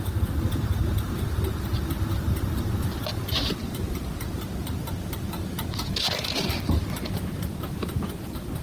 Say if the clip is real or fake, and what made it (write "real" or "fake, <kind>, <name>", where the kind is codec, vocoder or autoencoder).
real